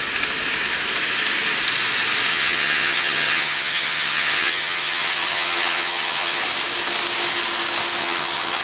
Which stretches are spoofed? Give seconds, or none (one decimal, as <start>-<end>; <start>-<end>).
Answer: 2.3-6.4; 8.0-8.6